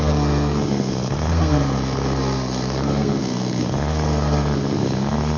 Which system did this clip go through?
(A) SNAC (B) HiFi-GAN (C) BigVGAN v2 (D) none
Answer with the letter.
A